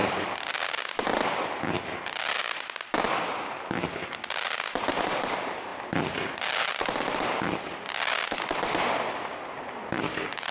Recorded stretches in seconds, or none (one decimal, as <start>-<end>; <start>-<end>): 0.0-5.0